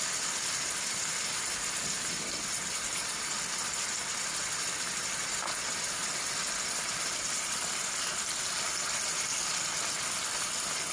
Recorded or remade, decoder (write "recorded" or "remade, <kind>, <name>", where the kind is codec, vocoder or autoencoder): recorded